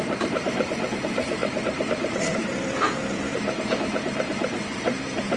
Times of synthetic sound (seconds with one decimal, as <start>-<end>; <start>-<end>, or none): 0.0-5.4